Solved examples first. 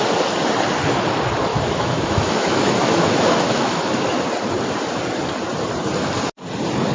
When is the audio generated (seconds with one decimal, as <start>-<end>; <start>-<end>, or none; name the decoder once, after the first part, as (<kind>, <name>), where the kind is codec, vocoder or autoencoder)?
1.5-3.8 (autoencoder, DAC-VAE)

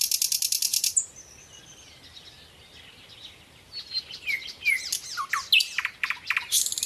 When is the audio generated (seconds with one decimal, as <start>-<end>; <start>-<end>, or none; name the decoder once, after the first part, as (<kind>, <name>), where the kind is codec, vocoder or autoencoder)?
0.7-1.6 (vocoder, BigVGAN v2)

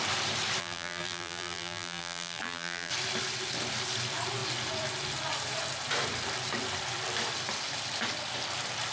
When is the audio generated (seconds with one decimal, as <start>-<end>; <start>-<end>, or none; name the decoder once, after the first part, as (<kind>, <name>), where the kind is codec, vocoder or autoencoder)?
0.6-2.9 (vocoder, BigVGAN v2)

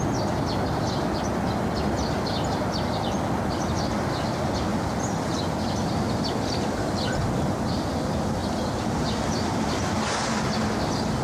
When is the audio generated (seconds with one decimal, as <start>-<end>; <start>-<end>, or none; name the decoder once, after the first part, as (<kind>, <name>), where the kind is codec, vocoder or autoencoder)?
4.7-5.3 (vocoder, BigVGAN v2); 8.4-9.6

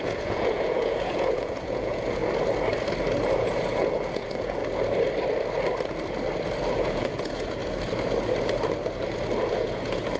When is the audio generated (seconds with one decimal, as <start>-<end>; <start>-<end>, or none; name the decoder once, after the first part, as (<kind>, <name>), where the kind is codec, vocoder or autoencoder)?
0.0-2.2 (vocoder, Vocos); 3.4-4.6; 6.7-7.6; 9.5-10.2

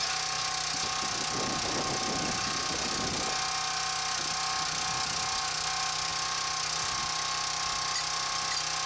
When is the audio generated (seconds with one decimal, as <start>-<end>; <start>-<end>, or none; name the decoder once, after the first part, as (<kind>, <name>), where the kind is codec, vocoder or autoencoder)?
none